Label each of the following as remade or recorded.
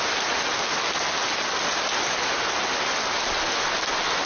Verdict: recorded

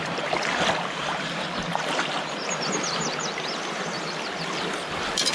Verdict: recorded